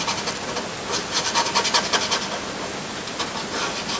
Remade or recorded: recorded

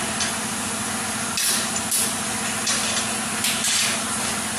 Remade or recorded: remade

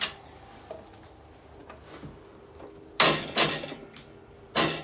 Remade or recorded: recorded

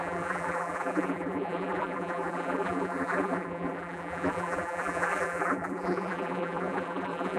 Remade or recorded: remade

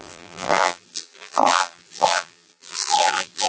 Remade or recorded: remade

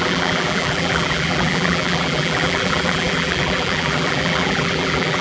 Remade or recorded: remade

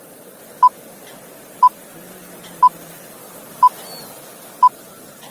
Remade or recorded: recorded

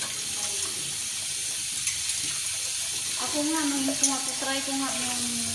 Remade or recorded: recorded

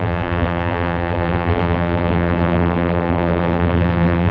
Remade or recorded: remade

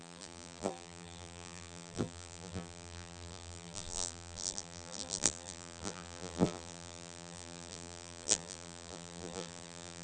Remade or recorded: remade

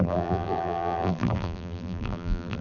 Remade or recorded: remade